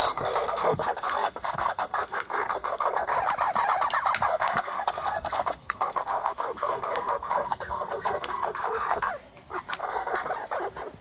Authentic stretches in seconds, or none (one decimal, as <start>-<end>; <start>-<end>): 3.1-4.3; 9.1-9.8; 10.3-11.0